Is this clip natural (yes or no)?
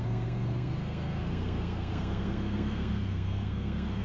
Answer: no